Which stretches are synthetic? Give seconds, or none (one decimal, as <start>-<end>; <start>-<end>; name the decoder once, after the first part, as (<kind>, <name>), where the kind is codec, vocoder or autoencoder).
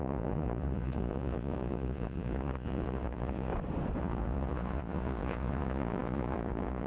0.0-3.5 (vocoder, Vocos); 4.0-6.9